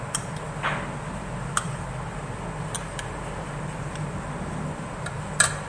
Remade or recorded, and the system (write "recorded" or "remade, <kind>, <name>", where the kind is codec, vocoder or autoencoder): recorded